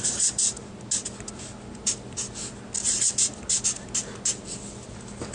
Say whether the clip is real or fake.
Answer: real